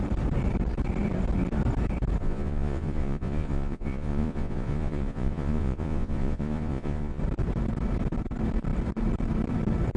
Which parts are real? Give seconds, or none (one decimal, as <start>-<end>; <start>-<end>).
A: 0.0-2.2; 7.2-10.0